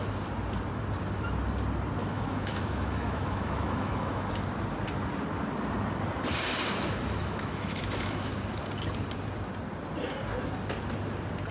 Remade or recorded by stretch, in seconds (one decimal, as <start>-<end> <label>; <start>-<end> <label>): 0.0-2.0 recorded; 2.0-4.3 remade; 4.3-7.2 recorded; 7.2-8.3 remade; 8.3-11.5 recorded